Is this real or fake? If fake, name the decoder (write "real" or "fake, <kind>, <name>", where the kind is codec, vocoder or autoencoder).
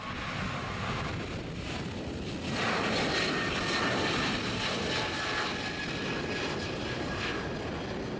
real